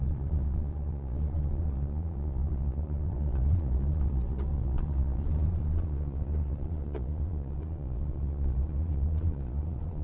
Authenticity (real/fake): fake